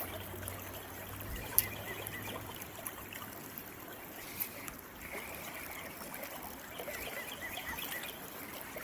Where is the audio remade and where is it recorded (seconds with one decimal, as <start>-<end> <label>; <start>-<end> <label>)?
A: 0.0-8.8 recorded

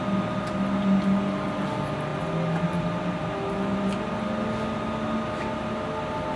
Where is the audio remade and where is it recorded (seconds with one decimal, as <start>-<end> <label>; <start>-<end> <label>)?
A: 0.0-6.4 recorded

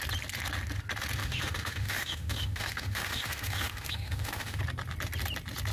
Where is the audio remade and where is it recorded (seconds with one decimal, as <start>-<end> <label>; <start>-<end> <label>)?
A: 0.0-1.2 recorded; 1.2-4.6 remade; 4.6-5.7 recorded